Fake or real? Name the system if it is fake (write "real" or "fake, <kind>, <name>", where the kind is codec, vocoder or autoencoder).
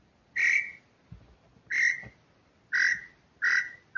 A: real